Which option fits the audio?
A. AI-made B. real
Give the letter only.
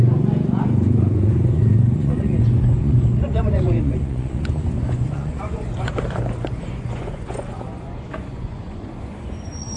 A